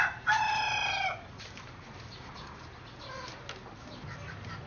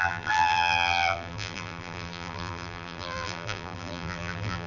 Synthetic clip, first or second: second